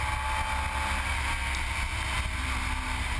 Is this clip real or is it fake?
real